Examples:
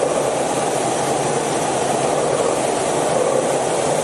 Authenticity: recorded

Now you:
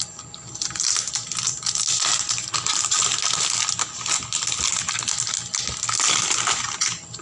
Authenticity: recorded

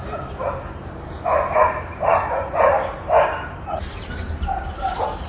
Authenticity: recorded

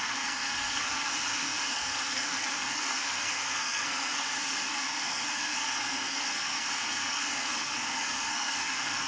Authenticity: remade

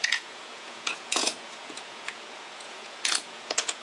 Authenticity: remade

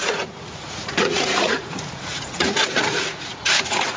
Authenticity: remade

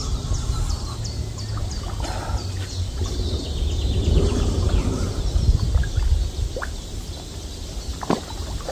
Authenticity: recorded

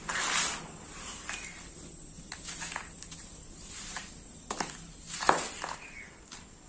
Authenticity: recorded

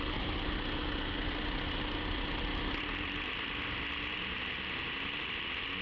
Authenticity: recorded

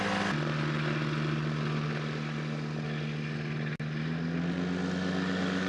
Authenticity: recorded